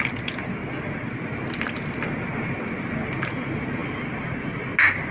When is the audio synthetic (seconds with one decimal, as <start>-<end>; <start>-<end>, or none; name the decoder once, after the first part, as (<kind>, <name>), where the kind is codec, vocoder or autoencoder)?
none